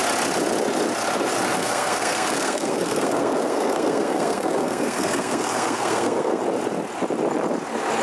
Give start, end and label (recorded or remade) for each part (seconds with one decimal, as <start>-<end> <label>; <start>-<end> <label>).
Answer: 0.0-1.6 recorded; 1.6-6.4 remade; 6.4-8.0 recorded